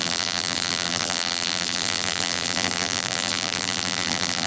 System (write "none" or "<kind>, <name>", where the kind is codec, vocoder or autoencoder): vocoder, BigVGAN v2